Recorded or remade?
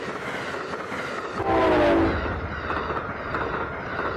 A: recorded